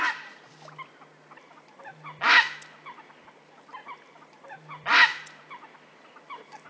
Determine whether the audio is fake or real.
real